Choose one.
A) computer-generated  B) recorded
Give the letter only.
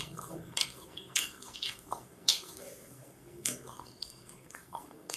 A